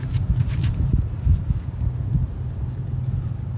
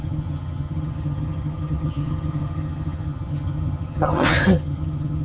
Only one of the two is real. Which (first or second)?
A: first